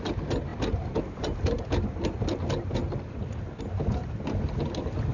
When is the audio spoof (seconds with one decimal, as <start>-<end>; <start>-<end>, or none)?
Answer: none